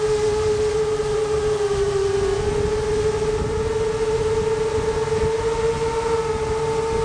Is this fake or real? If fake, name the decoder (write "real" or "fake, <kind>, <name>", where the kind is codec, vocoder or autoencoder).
real